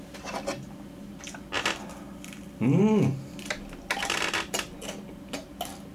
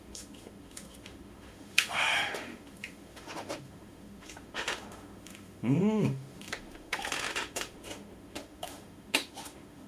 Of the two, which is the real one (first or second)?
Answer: first